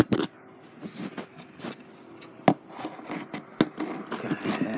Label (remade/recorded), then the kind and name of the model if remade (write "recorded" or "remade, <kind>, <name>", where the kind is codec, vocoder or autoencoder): recorded